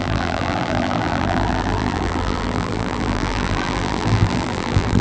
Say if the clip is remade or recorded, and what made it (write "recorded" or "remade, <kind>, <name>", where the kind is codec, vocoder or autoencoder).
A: remade, vocoder, BigVGAN v2